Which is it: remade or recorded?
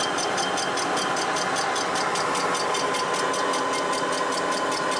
recorded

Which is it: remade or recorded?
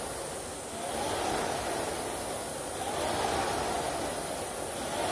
recorded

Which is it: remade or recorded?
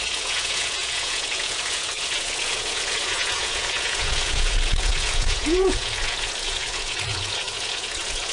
remade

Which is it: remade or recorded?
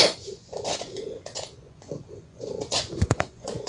remade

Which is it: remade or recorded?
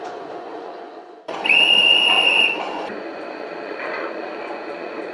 remade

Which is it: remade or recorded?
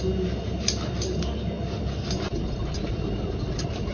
recorded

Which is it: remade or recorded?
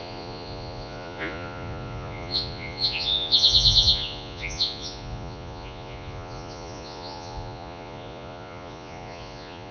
remade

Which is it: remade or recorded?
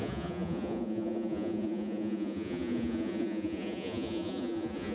remade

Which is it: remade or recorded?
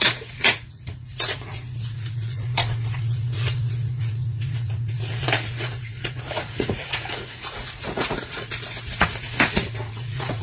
remade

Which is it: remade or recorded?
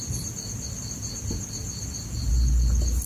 recorded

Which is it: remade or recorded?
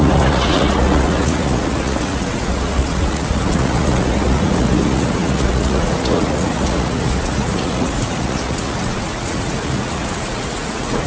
remade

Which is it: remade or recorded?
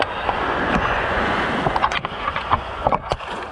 remade